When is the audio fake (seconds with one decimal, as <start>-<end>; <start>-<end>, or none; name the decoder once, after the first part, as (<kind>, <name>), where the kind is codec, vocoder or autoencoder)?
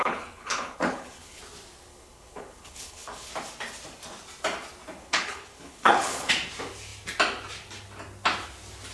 0.0-1.4 (codec, HILCodec); 1.9-3.3; 5.0-6.3